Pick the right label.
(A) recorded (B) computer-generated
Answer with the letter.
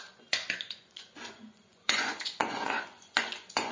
B